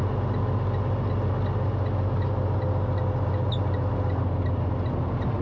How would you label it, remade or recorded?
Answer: recorded